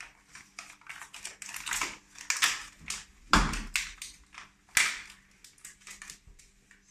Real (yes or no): yes